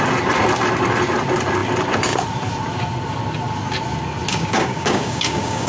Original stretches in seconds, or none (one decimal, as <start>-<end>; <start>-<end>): 0.0-4.3